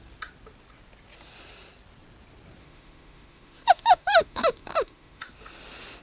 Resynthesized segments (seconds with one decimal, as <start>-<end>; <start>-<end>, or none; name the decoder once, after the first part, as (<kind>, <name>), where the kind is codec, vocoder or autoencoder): 2.6-5.3 (autoencoder, DAC-VAE)